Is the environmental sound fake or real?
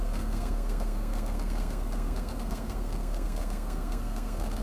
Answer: fake